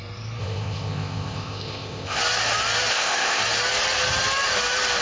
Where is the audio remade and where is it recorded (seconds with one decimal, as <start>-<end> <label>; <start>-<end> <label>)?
0.0-0.4 recorded; 0.4-2.2 remade; 2.2-2.9 recorded; 2.9-3.4 remade; 3.4-5.0 recorded

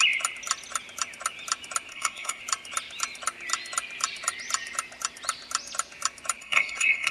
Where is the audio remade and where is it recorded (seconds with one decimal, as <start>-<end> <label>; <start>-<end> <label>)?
0.0-1.9 recorded; 1.9-2.4 remade; 2.4-6.4 recorded; 6.4-7.1 remade

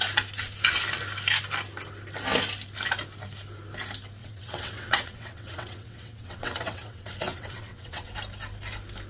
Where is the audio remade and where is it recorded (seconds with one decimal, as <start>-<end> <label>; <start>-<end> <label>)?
0.0-4.2 recorded; 4.2-8.1 remade; 8.1-9.1 recorded

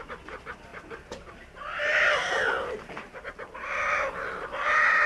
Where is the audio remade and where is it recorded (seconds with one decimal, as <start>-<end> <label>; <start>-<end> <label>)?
0.0-5.1 recorded

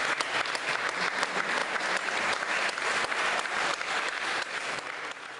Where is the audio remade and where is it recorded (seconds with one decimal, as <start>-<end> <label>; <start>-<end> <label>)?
0.0-1.6 recorded; 1.6-4.8 remade; 4.8-5.4 recorded